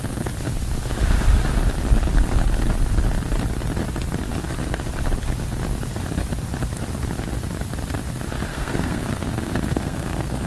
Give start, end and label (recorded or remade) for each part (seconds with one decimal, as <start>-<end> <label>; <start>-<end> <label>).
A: 0.0-8.5 recorded; 8.5-10.5 remade

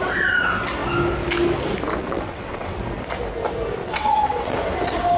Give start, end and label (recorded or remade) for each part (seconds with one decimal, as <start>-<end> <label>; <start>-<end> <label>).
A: 0.0-2.0 recorded; 2.0-2.8 remade; 2.8-3.8 recorded; 3.8-4.5 remade; 4.5-5.2 recorded

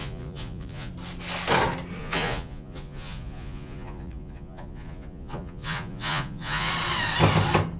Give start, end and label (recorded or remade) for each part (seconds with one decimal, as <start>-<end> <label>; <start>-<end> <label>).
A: 0.0-0.9 remade; 0.9-2.0 recorded; 2.0-6.7 remade; 6.7-7.8 recorded

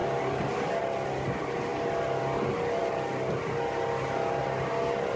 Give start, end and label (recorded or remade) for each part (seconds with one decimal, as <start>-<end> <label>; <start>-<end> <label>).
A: 0.0-0.7 remade; 0.7-5.2 recorded

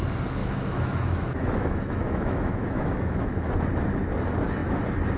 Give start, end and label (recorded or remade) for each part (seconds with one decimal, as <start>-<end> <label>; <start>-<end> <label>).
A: 0.0-0.4 recorded; 0.4-3.5 remade; 3.5-5.2 recorded